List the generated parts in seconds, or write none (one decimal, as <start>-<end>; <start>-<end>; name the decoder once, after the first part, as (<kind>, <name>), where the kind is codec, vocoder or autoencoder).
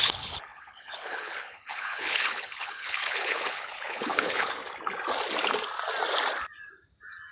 0.0-4.6 (codec, HILCodec)